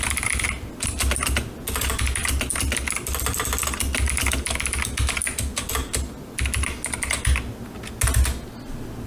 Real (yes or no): yes